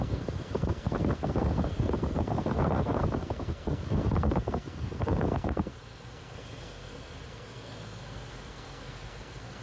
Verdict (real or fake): fake